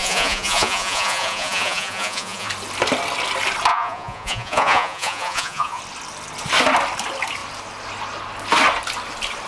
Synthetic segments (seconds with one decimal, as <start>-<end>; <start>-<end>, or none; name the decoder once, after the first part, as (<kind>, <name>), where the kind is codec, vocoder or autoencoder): 0.0-2.5 (vocoder, Vocos); 3.7-5.8